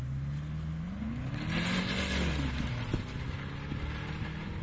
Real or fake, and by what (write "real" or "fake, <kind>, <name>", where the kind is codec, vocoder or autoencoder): real